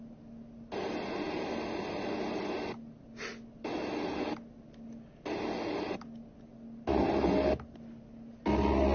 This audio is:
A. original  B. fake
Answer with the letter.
A